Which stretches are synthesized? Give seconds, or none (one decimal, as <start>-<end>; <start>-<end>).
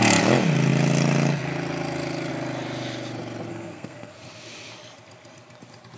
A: 3.5-4.1